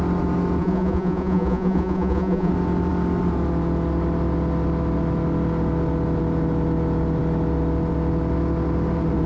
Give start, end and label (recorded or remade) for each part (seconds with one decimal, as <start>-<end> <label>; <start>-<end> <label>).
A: 0.0-0.6 recorded; 0.6-2.5 remade; 2.5-9.3 recorded